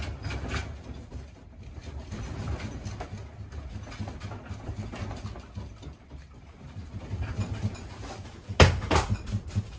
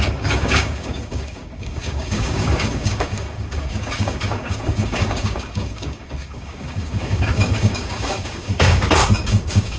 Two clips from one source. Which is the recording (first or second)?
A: first